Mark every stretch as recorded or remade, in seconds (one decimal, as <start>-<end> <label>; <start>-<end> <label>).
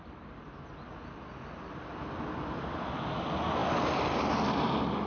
0.0-5.1 recorded